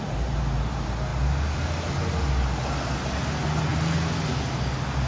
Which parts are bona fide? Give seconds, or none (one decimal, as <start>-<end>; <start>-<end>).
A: 0.0-5.1